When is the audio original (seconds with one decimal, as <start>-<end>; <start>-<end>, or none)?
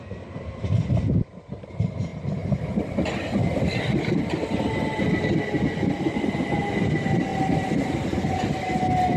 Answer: 0.0-9.2